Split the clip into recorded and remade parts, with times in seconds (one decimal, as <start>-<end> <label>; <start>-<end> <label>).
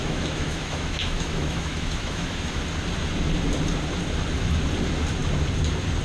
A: 0.0-2.6 remade; 2.6-6.0 recorded